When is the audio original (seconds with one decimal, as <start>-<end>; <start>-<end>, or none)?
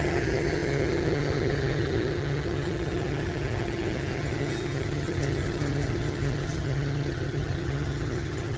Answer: none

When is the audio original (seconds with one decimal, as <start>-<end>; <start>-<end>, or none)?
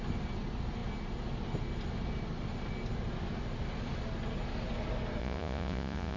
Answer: 0.0-5.2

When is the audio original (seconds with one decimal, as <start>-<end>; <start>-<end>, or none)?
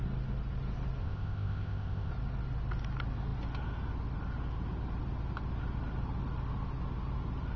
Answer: 0.0-1.0; 2.1-7.6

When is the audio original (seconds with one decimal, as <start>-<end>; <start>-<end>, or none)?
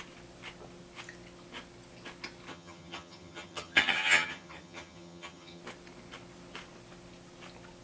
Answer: 0.0-2.5; 5.6-7.8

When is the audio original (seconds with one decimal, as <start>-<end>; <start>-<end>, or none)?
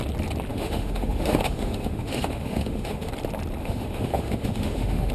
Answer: 0.0-0.5; 3.1-3.6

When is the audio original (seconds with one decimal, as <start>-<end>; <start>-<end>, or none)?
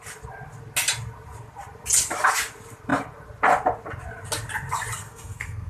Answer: 0.0-5.0